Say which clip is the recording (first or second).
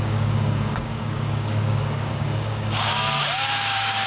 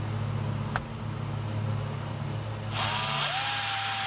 second